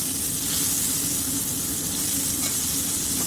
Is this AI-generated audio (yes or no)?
no